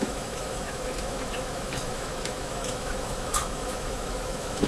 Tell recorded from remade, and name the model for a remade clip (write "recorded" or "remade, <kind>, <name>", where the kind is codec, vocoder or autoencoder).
remade, autoencoder, DAC-VAE